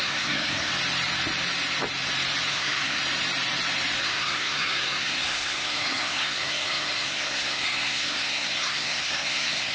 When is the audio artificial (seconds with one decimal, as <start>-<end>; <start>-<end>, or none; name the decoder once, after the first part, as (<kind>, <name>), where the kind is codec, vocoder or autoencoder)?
0.0-0.7 (codec, SNAC); 2.5-3.0; 4.0-9.7